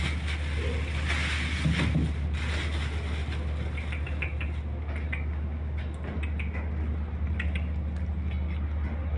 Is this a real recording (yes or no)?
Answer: yes